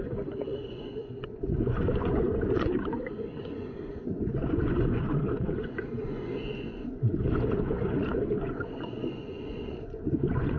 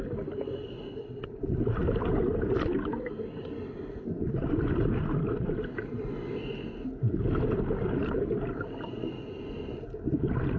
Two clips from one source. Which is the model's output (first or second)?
first